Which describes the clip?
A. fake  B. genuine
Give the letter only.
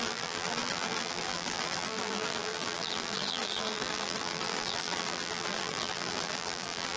A